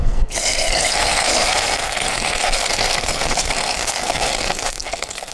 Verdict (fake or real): fake